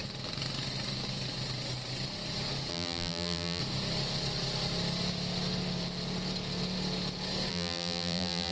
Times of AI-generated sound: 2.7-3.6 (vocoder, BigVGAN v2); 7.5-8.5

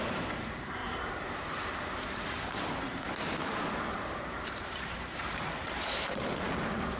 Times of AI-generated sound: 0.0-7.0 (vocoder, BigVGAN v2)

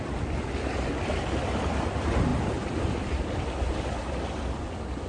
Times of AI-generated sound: 2.3-4.6 (vocoder, BigVGAN v2)

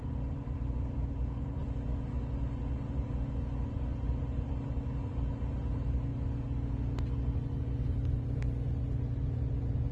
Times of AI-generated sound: none

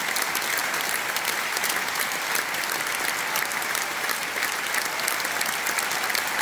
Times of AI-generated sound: 0.6-2.3 (vocoder, BigVGAN v2); 3.5-4.7

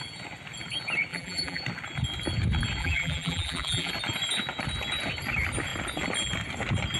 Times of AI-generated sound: 1.1-1.6 (vocoder, BigVGAN v2); 2.8-3.9

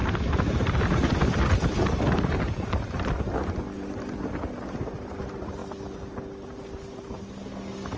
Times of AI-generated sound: 0.0-3.1 (vocoder, BigVGAN v2)

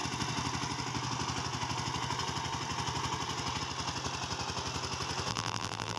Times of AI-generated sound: 5.3-6.0 (vocoder, BigVGAN v2)